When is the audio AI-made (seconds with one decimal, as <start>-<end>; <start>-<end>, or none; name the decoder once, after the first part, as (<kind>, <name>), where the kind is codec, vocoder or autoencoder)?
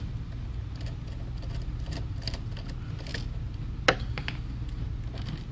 none